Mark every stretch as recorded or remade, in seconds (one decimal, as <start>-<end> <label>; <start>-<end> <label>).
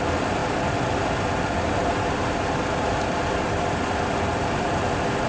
0.0-5.3 recorded